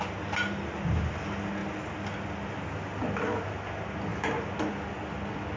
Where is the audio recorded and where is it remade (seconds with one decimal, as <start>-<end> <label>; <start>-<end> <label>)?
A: 0.0-5.6 recorded